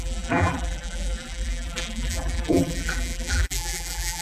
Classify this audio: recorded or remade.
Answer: remade